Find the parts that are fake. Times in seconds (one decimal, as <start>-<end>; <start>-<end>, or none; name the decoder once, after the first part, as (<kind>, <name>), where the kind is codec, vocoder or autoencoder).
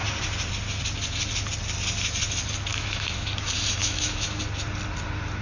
2.7-3.3 (autoencoder, DAC-VAE); 3.8-4.4